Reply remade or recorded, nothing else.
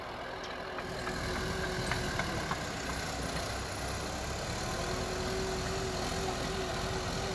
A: recorded